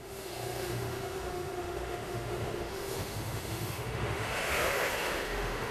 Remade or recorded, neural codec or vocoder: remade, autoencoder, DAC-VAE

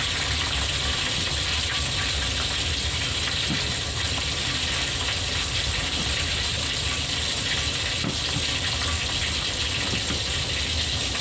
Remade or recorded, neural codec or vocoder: recorded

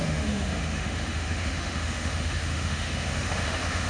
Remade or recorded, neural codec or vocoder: remade, autoencoder, DAC-VAE